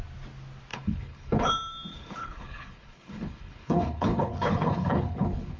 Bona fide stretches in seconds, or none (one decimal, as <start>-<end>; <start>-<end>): 0.0-0.7; 1.5-1.9